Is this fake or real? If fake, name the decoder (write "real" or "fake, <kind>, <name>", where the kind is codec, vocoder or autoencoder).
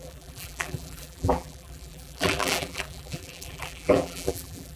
fake, vocoder, BigVGAN v2